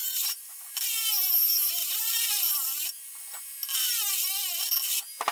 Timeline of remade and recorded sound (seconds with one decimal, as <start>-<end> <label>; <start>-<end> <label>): 0.0-1.1 remade; 1.1-1.8 recorded; 1.8-2.9 remade; 2.9-5.3 recorded